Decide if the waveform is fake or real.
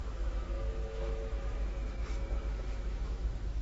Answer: fake